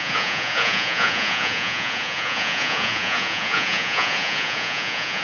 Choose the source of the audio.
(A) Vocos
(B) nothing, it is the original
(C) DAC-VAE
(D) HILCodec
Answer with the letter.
A